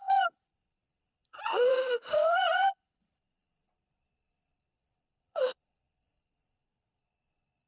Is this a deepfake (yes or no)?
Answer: yes